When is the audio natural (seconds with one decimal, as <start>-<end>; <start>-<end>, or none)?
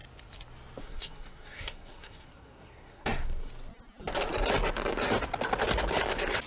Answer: 0.0-0.8; 3.5-6.5